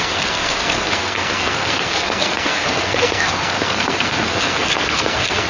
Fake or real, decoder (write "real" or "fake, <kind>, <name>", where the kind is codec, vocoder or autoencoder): fake, codec, SNAC